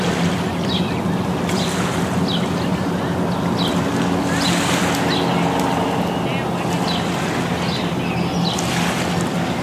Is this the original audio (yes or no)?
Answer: yes